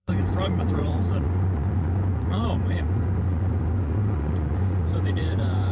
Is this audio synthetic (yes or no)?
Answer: yes